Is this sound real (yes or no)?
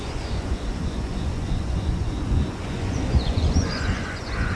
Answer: no